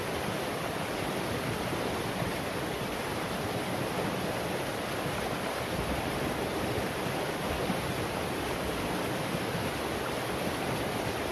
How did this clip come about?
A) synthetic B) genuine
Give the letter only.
B